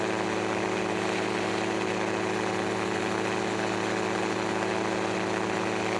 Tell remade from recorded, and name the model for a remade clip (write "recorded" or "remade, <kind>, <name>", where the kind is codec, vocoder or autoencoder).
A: recorded